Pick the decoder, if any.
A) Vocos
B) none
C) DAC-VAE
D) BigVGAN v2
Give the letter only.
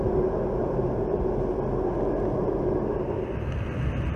B